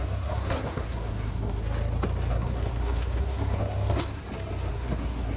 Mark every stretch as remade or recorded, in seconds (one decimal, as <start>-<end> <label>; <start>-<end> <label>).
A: 0.0-1.6 remade; 1.6-2.3 recorded; 2.3-4.2 remade; 4.2-4.7 recorded; 4.7-5.4 remade